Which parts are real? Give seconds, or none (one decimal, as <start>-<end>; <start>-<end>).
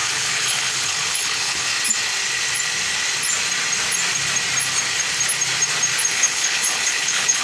1.7-6.1